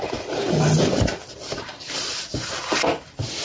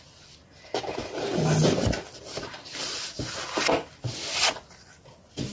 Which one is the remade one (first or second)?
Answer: first